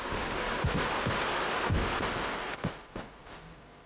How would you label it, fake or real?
real